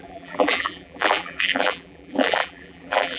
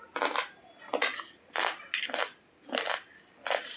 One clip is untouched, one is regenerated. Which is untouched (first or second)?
second